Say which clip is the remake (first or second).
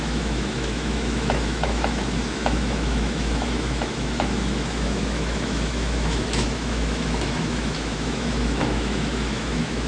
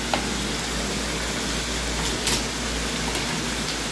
first